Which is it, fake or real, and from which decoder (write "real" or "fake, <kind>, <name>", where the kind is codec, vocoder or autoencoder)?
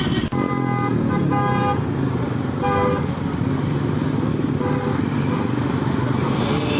real